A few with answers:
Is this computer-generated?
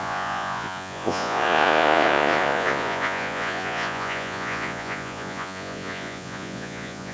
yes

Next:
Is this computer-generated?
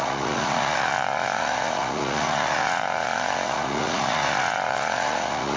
yes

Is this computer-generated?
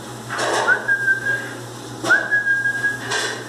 no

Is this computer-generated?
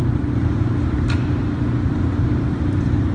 no